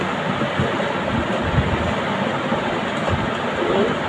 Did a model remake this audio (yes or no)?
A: no